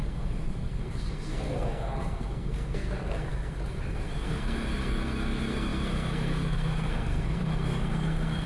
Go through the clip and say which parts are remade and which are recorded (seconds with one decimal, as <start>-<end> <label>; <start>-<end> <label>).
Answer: 0.0-8.5 remade